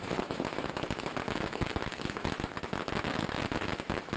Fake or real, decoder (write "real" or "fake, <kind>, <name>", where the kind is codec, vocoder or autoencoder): fake, autoencoder, DAC-VAE